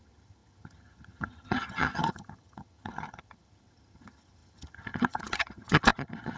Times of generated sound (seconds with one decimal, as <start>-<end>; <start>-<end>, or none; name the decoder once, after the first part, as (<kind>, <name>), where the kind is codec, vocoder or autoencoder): 0.0-6.4 (vocoder, HiFi-GAN)